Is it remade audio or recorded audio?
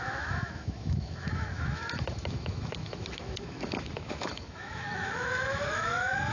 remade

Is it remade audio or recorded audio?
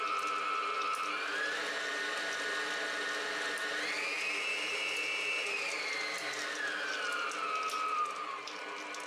recorded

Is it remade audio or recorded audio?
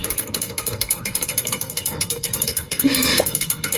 remade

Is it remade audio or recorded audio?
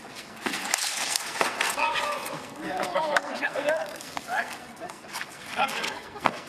remade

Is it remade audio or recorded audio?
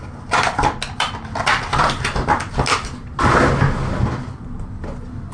recorded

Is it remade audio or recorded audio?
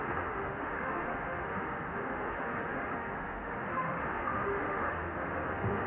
remade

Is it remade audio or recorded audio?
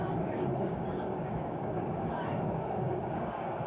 remade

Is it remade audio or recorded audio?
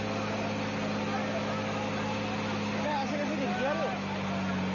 recorded